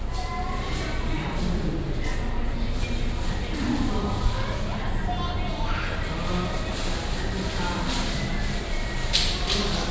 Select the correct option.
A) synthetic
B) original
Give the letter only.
B